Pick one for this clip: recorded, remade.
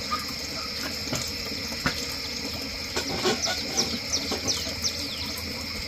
recorded